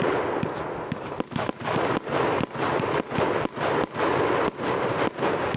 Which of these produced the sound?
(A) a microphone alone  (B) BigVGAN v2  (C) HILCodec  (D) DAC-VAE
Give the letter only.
A